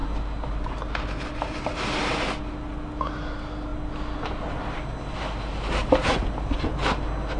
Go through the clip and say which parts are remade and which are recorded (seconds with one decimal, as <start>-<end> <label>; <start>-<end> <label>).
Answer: 0.0-7.4 recorded